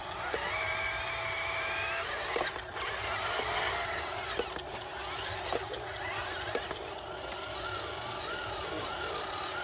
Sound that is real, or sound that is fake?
real